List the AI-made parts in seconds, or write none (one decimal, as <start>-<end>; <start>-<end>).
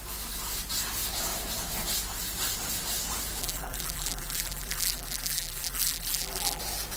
3.4-6.6